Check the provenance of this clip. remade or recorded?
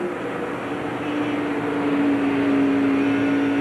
recorded